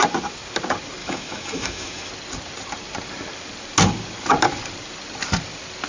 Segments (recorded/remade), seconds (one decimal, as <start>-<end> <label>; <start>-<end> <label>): 0.0-1.0 recorded; 1.0-2.1 remade; 2.1-5.9 recorded

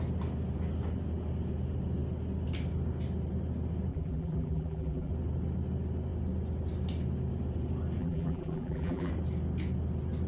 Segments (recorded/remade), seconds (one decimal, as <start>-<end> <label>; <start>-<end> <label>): 0.0-3.9 recorded; 3.9-5.1 remade; 5.1-8.0 recorded; 8.0-9.1 remade; 9.1-10.3 recorded

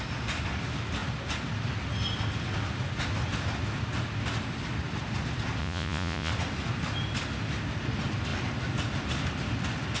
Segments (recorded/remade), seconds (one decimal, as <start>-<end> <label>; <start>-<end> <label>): 0.0-5.6 recorded; 5.6-6.3 remade; 6.3-10.0 recorded

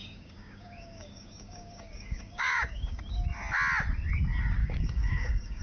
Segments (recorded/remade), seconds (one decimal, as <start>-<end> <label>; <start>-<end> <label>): 0.0-3.0 remade; 3.0-4.6 recorded; 4.6-5.6 remade

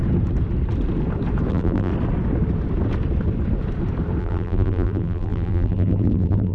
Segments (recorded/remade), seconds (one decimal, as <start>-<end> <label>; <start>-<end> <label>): 0.0-1.5 recorded; 1.5-1.9 remade; 1.9-4.2 recorded; 4.2-6.5 remade

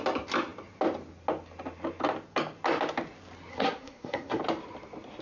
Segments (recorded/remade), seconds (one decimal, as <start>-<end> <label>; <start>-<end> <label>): 0.0-3.5 recorded; 3.5-4.4 remade; 4.4-5.2 recorded

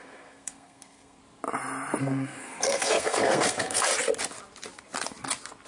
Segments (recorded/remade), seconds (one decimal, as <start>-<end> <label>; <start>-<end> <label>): 0.0-1.2 remade; 1.2-2.0 recorded; 2.0-3.9 remade; 3.9-5.7 recorded

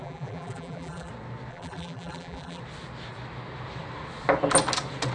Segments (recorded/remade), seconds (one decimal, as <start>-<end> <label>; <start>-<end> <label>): 0.0-1.1 remade; 1.1-1.5 recorded; 1.5-2.6 remade; 2.6-5.1 recorded